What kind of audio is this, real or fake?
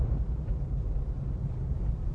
fake